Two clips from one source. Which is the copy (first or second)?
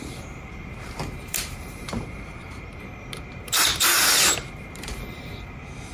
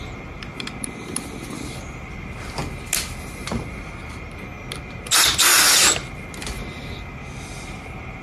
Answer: first